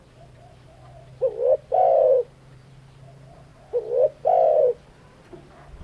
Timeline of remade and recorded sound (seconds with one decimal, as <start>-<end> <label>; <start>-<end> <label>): 0.0-5.8 recorded